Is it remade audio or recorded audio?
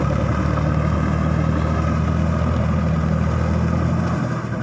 recorded